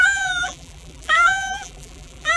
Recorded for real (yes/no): no